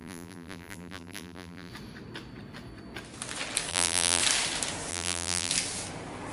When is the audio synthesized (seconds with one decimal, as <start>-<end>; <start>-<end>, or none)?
0.0-1.7; 3.7-4.2; 4.9-5.5